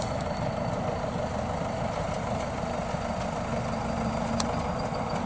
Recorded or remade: recorded